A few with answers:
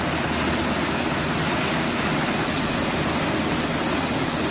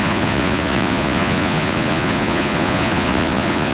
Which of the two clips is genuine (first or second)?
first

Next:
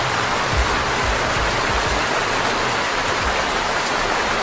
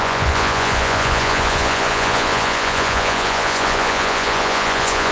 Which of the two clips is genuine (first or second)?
first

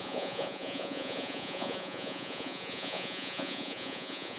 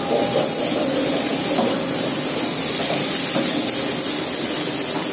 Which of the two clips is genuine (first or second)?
second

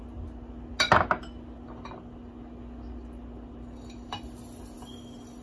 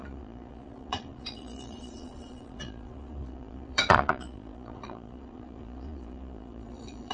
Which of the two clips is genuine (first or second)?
first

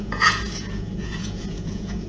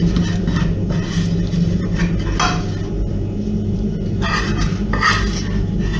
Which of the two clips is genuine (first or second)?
second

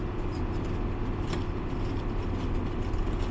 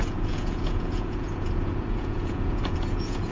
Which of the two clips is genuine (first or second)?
first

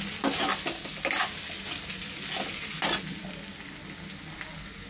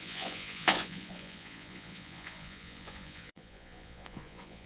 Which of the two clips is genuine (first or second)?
first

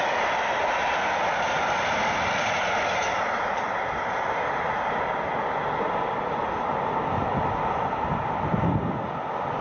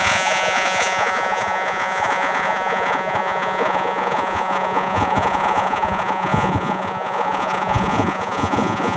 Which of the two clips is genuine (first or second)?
first